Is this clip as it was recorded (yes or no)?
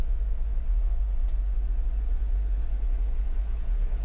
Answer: no